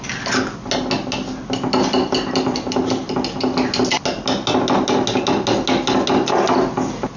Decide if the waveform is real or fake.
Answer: real